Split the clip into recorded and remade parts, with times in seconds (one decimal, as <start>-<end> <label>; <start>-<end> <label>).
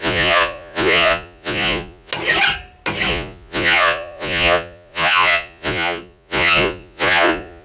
0.0-2.1 remade; 2.1-3.1 recorded; 3.1-7.6 remade